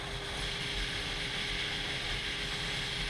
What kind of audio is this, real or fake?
real